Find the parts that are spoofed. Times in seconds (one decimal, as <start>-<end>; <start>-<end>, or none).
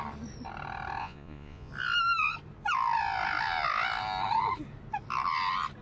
1.0-1.7